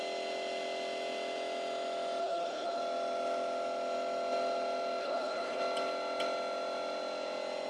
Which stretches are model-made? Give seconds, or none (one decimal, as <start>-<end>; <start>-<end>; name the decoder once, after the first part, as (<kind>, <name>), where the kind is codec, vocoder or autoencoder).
2.2-2.8 (codec, HILCodec); 5.0-5.6